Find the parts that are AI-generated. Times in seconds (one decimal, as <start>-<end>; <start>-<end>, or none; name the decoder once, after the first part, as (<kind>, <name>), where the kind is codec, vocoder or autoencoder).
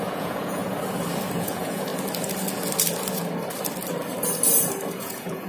0.0-0.6 (vocoder, Vocos); 1.4-1.9; 5.0-5.5